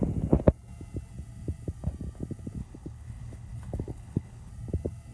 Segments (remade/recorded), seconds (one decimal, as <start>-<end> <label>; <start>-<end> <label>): 0.0-2.6 recorded; 2.6-4.5 remade; 4.5-5.1 recorded